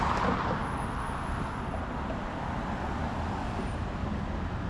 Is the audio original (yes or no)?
yes